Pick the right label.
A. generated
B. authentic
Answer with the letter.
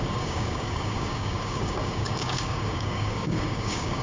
A